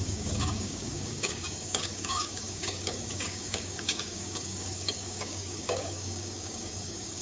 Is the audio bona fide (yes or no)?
no